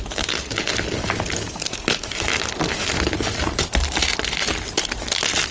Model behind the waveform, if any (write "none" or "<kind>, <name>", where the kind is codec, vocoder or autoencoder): none